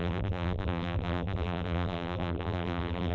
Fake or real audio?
fake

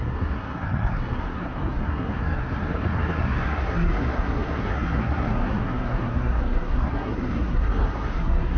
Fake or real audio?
fake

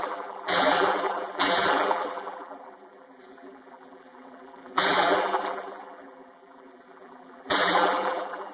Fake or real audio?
fake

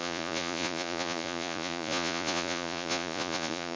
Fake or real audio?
fake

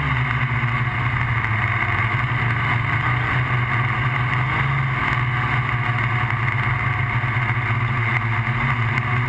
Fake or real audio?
real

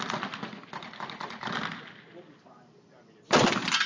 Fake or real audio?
real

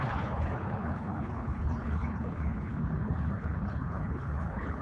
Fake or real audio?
fake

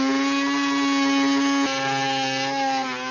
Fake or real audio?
real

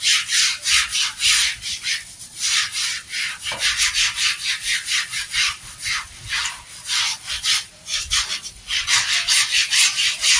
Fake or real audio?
fake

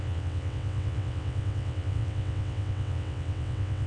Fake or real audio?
fake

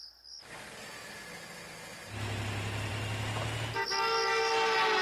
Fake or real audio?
real